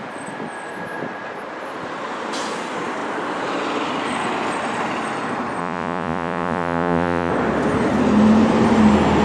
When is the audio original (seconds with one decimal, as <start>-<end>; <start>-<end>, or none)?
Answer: 0.0-5.6; 7.3-9.2